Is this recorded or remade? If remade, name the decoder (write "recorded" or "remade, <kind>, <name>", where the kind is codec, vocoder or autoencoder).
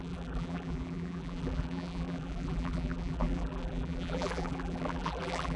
remade, vocoder, BigVGAN v2